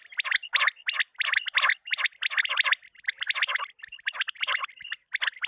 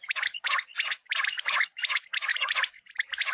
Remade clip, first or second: second